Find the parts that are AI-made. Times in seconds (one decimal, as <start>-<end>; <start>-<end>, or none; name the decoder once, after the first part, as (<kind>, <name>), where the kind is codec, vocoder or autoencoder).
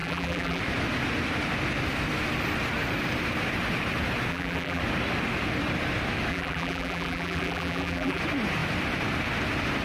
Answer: 0.0-0.6 (vocoder, BigVGAN v2); 4.3-4.8; 6.3-8.2